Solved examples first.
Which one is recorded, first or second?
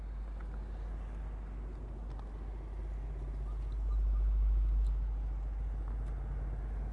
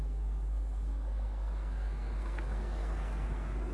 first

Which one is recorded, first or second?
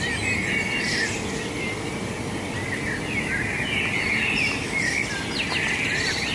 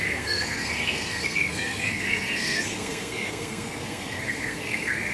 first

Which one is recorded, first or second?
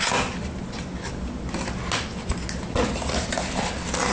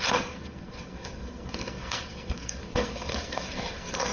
first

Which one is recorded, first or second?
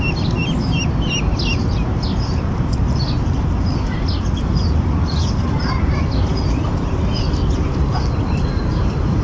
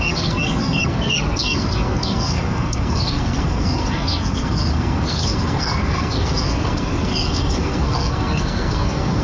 first